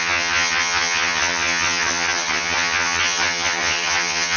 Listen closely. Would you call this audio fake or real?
fake